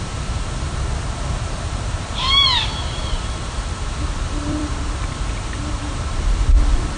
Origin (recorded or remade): remade